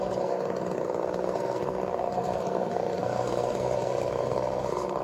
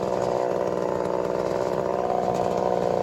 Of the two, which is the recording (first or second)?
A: second